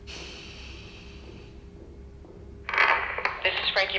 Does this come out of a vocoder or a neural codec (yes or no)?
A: no